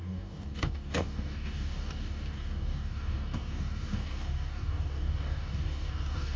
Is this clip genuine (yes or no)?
no